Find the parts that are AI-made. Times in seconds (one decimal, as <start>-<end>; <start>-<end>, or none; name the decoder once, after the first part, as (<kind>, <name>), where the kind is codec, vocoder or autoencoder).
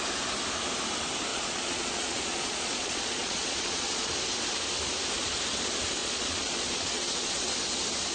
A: 1.3-4.1 (vocoder, Vocos); 6.0-7.4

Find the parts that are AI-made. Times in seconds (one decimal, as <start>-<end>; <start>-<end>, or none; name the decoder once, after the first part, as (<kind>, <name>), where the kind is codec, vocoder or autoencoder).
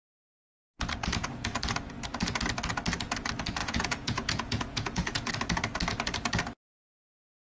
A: 3.6-5.3 (vocoder, Vocos)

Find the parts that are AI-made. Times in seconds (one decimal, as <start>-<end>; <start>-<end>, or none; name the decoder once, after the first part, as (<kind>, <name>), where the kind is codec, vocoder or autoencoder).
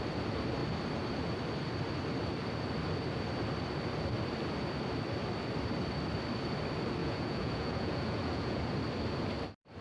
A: 7.0-8.6 (vocoder, Vocos)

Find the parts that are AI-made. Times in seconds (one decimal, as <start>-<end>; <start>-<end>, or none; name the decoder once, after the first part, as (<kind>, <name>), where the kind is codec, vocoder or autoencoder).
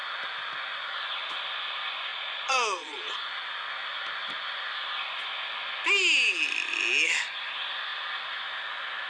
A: 2.1-3.1 (vocoder, Vocos)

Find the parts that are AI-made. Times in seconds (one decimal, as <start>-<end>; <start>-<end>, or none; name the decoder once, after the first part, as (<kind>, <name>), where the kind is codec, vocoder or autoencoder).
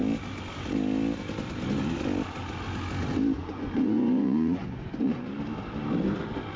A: 3.4-5.3 (vocoder, Vocos)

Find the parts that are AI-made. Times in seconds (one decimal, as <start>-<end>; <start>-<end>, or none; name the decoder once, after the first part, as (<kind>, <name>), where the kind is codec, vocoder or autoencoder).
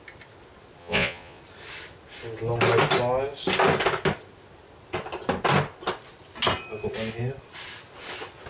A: 0.8-1.4 (vocoder, Vocos)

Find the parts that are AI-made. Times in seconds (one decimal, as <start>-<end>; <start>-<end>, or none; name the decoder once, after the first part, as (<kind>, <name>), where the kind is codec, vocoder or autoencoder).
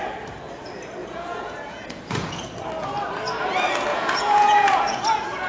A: 1.0-2.4 (vocoder, Vocos); 3.9-5.0